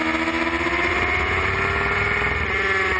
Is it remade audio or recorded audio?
recorded